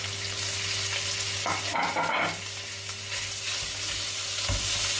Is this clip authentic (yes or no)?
yes